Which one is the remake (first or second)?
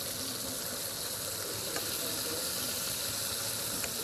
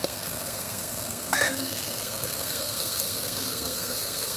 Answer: second